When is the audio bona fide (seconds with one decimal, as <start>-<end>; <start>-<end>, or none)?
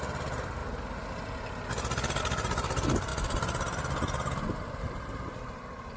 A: 0.6-2.2; 3.1-4.8